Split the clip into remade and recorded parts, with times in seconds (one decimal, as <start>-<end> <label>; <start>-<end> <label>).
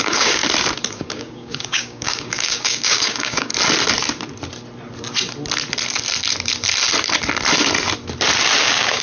0.0-0.4 remade; 0.4-0.9 recorded; 0.9-3.5 remade; 3.5-8.6 recorded; 8.6-9.0 remade